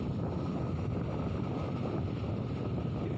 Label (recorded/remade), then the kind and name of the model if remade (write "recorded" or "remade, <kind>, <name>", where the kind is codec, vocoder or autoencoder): recorded